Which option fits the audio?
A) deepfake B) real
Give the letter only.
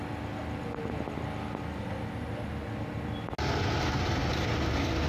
B